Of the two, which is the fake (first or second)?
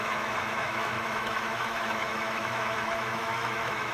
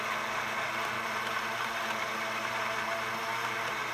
first